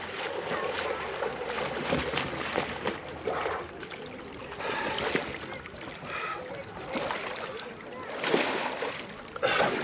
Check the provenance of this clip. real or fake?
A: real